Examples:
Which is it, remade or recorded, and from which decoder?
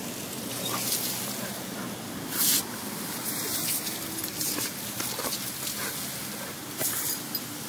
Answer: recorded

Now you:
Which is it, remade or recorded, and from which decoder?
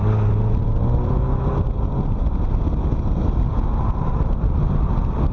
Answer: recorded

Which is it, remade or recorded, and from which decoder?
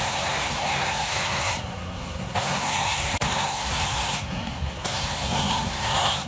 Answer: remade, codec, SNAC